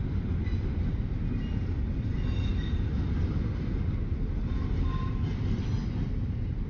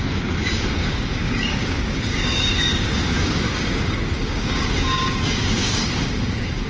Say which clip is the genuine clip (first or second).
first